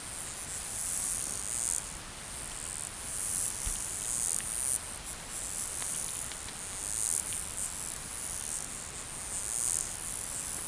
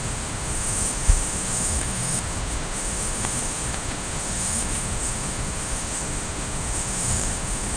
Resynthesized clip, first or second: second